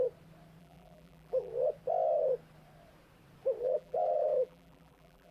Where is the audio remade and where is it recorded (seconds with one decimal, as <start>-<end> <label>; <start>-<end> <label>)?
0.0-0.6 recorded; 0.6-1.5 remade; 1.5-3.6 recorded; 3.6-5.3 remade